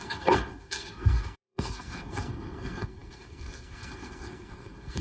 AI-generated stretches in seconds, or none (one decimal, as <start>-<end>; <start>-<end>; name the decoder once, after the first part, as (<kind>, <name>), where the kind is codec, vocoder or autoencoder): 0.0-5.0 (codec, SNAC)